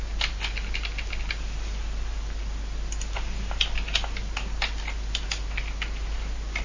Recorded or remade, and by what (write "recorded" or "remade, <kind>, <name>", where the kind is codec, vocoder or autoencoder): recorded